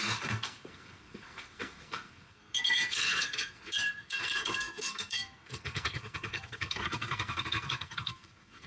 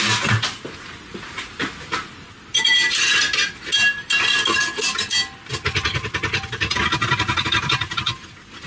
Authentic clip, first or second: second